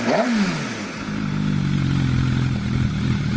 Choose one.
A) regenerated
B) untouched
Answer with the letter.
B